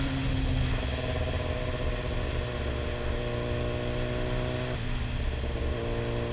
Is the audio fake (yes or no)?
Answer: no